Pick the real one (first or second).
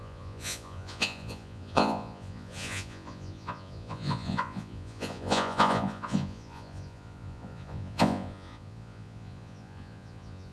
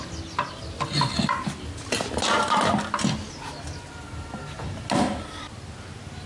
second